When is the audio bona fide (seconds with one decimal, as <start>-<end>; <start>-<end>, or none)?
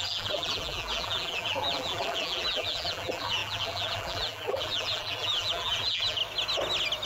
6.2-7.1